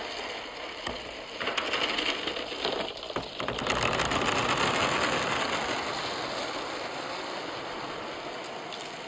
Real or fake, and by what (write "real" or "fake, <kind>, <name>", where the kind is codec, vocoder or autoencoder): real